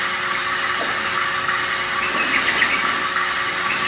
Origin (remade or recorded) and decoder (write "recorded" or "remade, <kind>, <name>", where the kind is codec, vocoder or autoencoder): recorded